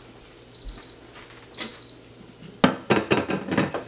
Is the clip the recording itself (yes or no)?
yes